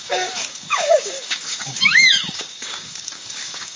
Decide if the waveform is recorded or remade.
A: remade